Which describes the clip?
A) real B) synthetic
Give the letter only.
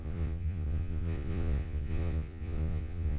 B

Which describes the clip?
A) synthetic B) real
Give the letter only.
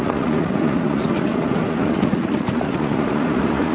A